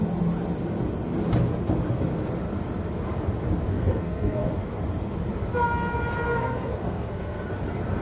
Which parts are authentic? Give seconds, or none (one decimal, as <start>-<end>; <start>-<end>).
0.0-3.7; 4.5-6.4; 7.5-8.0

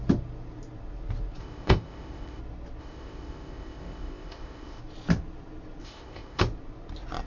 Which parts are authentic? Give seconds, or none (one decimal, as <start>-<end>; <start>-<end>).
0.0-1.4; 2.4-2.8; 4.8-5.8; 6.4-7.3

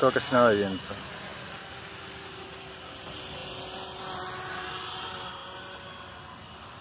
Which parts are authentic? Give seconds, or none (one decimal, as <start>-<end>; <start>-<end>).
1.3-1.9; 3.4-4.9

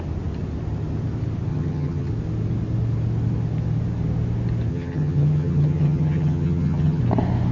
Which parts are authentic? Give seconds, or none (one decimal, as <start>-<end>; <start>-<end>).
0.0-1.5; 2.1-4.7; 7.0-7.5

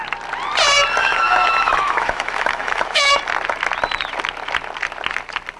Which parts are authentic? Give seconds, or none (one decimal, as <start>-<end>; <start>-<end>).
0.0-1.0; 3.2-5.6

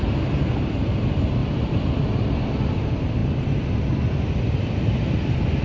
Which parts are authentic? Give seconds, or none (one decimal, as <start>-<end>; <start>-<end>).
0.0-1.4; 2.0-3.2; 4.0-5.6

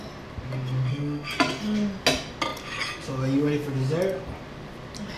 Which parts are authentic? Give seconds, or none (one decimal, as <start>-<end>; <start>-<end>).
0.0-0.9; 1.6-5.2

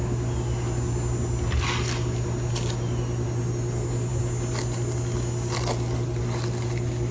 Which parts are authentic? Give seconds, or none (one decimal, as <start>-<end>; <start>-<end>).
0.0-7.1